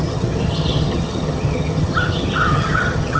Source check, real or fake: fake